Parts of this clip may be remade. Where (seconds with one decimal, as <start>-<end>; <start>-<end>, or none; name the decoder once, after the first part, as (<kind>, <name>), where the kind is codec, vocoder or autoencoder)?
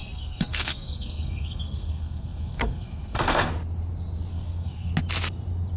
0.0-3.5 (codec, SNAC); 4.3-4.9